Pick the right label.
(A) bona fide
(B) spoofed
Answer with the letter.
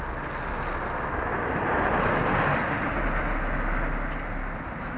A